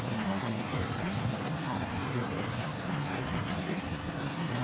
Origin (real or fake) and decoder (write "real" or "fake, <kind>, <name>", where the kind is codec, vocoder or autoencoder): fake, codec, SNAC